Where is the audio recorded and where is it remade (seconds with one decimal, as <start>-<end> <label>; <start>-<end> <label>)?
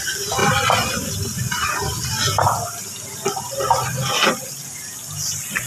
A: 0.0-5.7 recorded